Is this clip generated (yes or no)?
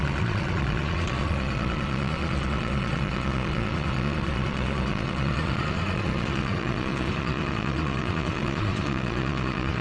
yes